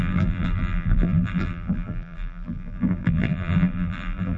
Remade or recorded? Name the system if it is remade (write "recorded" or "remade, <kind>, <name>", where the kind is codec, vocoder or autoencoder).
remade, vocoder, BigVGAN v2